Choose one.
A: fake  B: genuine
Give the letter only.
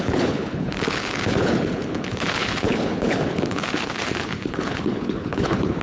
A